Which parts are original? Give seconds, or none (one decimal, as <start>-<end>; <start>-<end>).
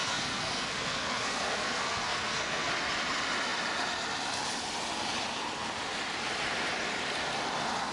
2.7-7.9